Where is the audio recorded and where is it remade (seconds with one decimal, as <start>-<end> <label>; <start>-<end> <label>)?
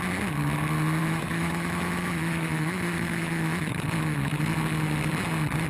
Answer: 0.0-1.0 recorded; 1.0-4.4 remade; 4.4-5.7 recorded